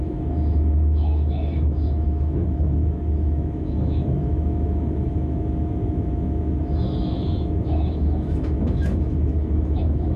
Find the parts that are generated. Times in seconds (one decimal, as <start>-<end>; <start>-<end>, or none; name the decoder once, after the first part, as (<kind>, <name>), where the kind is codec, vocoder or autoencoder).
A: 0.0-10.2 (autoencoder, DAC-VAE)